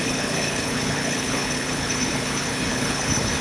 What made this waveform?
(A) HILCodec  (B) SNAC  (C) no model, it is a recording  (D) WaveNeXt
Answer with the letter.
A